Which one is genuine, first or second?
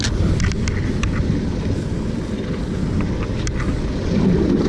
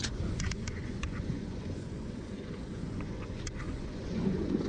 first